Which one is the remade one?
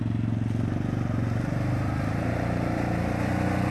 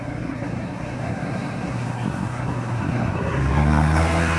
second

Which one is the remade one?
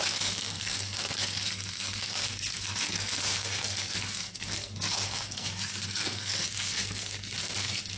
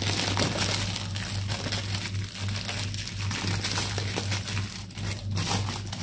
first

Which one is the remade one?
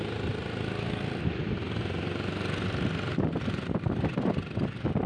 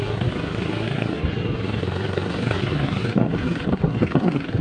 second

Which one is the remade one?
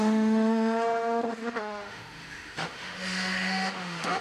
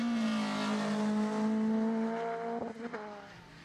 first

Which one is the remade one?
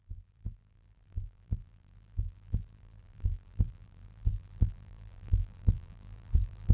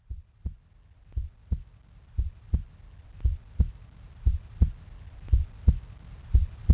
first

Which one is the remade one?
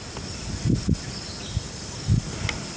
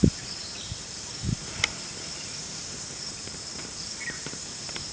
second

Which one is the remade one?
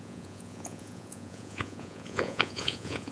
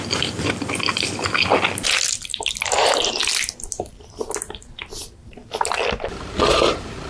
first